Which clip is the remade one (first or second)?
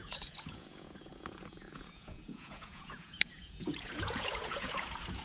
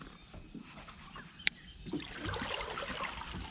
first